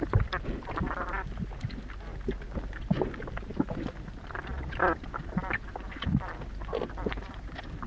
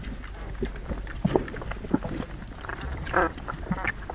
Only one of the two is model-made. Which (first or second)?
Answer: second